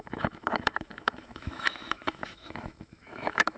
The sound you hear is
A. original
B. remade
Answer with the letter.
B